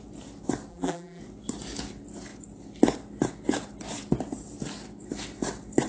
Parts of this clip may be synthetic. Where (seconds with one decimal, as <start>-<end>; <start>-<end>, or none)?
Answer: 0.7-1.2